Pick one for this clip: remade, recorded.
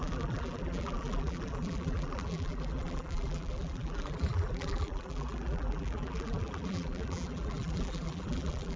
remade